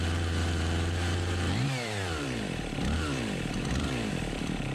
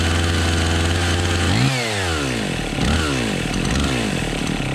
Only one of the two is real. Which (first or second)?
second